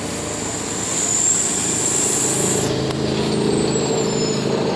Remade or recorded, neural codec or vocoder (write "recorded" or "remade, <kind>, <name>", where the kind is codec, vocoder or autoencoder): recorded